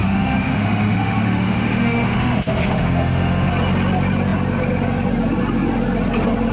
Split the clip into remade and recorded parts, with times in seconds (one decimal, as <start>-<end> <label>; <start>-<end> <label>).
0.0-3.5 remade; 3.5-6.5 recorded